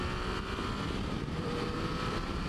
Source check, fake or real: real